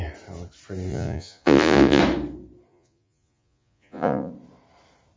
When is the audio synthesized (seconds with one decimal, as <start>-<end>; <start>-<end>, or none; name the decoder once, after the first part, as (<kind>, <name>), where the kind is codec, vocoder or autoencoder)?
0.9-2.0 (vocoder, Vocos); 2.7-4.3